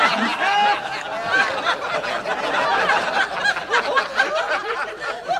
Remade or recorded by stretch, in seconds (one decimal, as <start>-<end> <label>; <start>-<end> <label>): 0.0-2.7 recorded; 2.7-5.4 remade